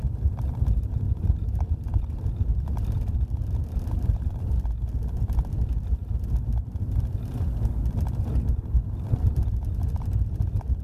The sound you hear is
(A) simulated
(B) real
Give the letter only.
B